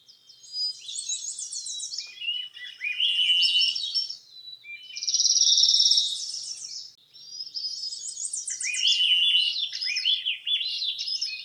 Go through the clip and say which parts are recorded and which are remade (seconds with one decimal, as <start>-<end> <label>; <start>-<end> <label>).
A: 0.0-10.4 recorded; 10.4-11.4 remade